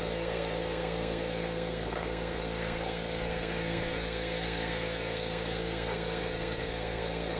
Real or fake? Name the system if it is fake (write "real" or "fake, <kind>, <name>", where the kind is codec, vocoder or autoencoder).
fake, codec, SNAC